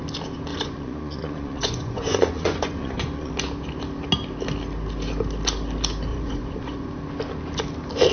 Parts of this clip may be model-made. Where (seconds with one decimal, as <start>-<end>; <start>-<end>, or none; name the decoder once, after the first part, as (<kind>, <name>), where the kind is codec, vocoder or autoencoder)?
0.5-3.3 (vocoder, Vocos); 6.1-6.9